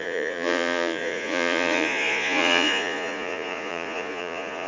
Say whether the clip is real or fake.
fake